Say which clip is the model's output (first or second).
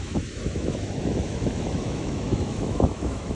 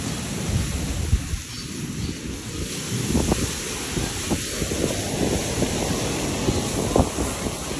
first